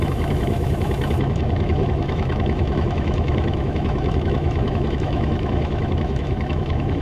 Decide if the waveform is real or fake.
fake